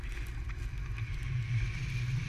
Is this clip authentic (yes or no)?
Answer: yes